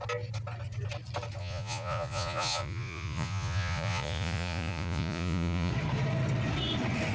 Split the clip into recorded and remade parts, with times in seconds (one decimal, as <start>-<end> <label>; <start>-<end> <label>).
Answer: 0.0-1.4 recorded; 1.4-5.7 remade; 5.7-7.1 recorded

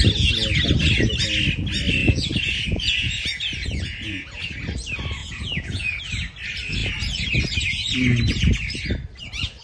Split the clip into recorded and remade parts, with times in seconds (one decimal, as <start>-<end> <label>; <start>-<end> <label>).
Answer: 0.0-2.0 recorded; 2.0-4.4 remade; 4.4-5.2 recorded; 5.2-6.0 remade; 6.0-9.6 recorded

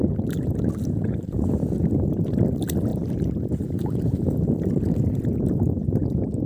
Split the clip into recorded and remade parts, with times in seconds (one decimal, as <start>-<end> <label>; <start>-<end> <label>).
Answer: 0.0-6.5 recorded

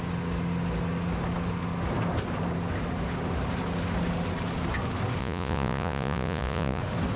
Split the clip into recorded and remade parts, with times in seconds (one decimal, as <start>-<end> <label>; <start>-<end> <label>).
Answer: 0.0-5.2 recorded; 5.2-6.8 remade; 6.8-7.2 recorded